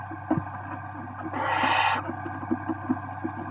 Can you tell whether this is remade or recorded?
recorded